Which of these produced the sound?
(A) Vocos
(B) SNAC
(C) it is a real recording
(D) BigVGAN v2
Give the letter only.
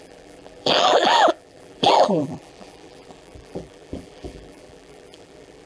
D